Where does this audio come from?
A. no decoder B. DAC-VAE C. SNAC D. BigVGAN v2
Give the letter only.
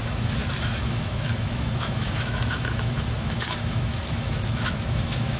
B